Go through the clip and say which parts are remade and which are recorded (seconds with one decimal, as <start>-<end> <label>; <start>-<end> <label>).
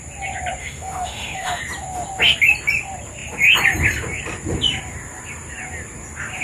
0.0-0.6 recorded; 0.6-1.6 remade; 1.6-6.4 recorded